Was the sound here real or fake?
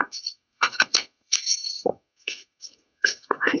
fake